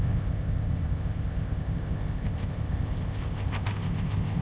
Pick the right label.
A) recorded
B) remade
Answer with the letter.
B